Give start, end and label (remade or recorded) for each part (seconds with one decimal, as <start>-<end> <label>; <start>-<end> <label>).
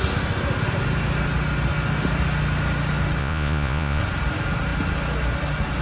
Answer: 0.0-3.2 recorded; 3.2-4.0 remade; 4.0-5.8 recorded